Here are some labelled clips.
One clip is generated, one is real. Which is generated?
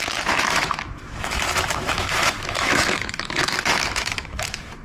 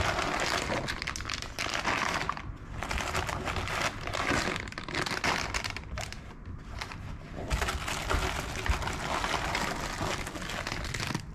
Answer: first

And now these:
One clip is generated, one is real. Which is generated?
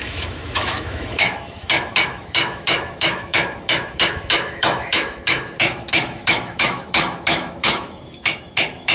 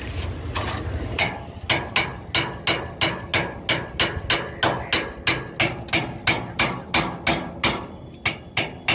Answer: first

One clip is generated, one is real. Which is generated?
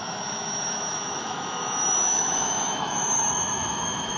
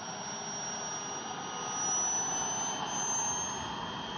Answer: first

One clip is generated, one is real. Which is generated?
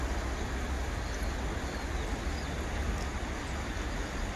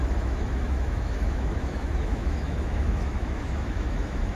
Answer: second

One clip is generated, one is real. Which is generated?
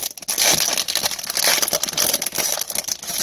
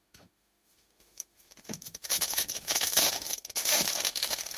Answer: second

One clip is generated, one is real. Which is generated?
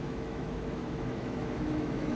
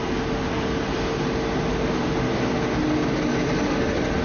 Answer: first